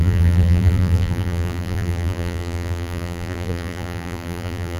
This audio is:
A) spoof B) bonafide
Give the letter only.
A